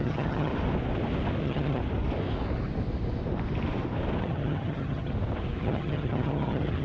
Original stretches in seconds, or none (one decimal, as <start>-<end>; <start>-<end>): 0.5-1.4; 1.8-4.2; 5.1-5.6